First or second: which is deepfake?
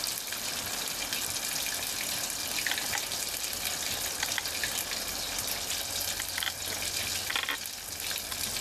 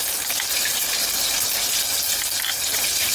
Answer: second